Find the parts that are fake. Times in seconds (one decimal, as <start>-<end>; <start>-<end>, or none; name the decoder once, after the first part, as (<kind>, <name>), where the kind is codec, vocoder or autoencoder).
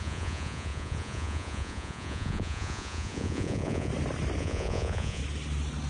0.0-3.9 (vocoder, Vocos); 4.4-5.2